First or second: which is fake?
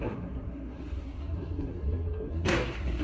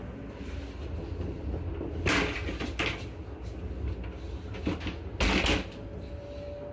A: first